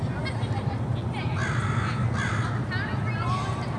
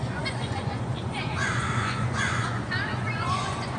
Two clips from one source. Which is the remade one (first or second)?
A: second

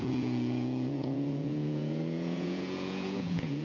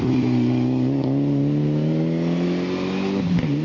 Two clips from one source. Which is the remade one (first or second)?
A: first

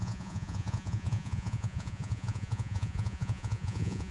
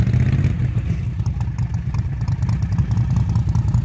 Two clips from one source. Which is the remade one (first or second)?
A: first